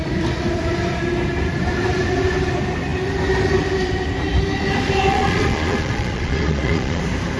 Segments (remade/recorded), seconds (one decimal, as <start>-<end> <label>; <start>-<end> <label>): 0.0-5.1 recorded; 5.1-7.0 remade; 7.0-7.4 recorded